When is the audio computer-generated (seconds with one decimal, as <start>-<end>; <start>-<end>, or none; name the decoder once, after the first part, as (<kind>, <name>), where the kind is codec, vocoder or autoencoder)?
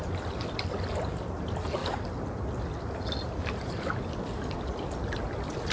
0.0-1.8 (vocoder, BigVGAN v2); 4.1-5.7